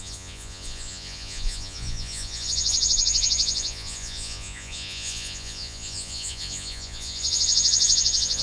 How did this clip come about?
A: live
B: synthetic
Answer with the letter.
B